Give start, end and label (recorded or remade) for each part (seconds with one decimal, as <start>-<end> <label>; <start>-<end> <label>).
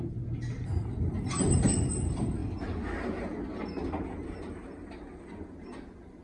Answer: 0.0-2.4 remade; 2.4-4.2 recorded; 4.2-6.2 remade